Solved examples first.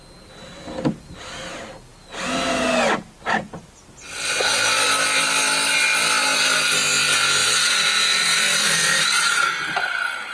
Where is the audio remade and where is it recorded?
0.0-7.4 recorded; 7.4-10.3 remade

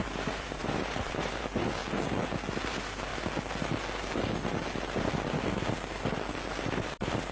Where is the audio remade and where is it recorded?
0.0-1.8 remade; 1.8-2.7 recorded; 2.7-3.1 remade; 3.1-6.7 recorded; 6.7-7.3 remade

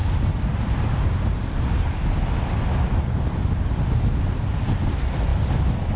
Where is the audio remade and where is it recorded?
0.0-6.0 recorded

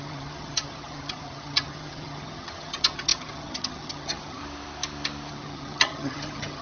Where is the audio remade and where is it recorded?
0.0-4.4 remade; 4.4-5.3 recorded; 5.3-6.6 remade

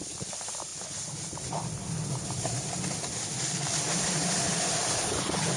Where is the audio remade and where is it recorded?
0.0-0.7 remade; 0.7-4.1 recorded; 4.1-5.6 remade

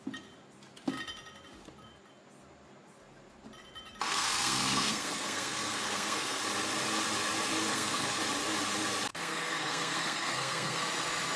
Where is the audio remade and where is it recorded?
0.0-4.1 recorded; 4.1-6.4 remade; 6.4-7.7 recorded; 7.7-8.2 remade; 8.2-9.1 recorded; 9.1-10.8 remade; 10.8-11.4 recorded